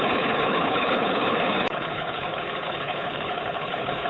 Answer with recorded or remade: remade